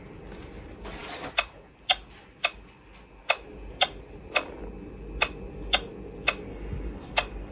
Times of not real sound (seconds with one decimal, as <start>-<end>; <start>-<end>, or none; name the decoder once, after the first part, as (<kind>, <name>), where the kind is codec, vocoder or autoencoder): 6.5-7.5 (codec, DAC)